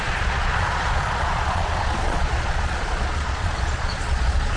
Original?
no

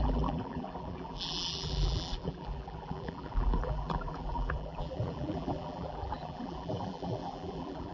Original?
no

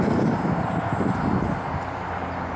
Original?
yes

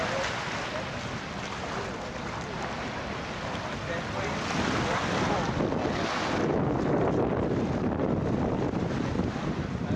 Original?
yes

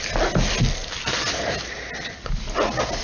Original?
yes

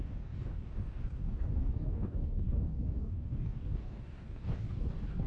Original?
no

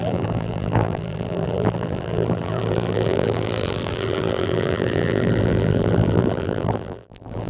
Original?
no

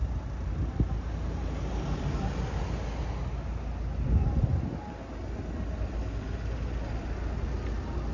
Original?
yes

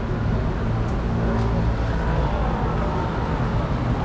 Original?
yes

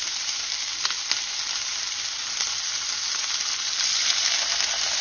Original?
yes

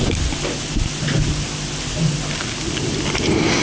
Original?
yes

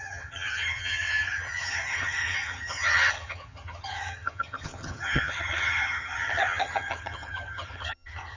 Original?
no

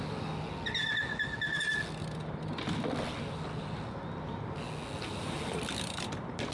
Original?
yes